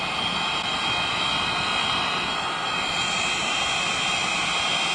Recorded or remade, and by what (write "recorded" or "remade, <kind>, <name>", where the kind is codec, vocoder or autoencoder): recorded